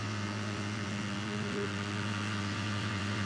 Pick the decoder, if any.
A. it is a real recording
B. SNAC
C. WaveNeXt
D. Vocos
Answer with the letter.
C